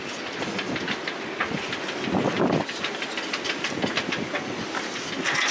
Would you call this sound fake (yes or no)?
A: no